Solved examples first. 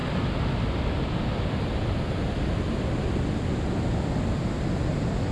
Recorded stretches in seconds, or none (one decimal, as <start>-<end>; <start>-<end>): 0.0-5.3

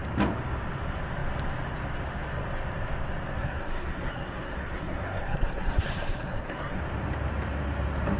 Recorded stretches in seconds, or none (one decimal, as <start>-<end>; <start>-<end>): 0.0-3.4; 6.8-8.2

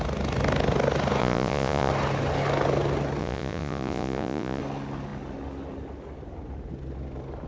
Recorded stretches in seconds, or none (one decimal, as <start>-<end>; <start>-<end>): 0.0-1.2; 1.9-3.2; 4.6-7.5

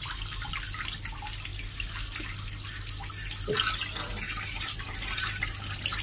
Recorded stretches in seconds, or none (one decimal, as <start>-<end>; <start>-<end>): 0.0-6.0

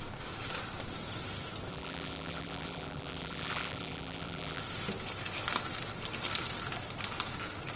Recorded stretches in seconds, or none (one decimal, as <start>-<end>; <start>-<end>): 0.0-1.7; 4.6-7.8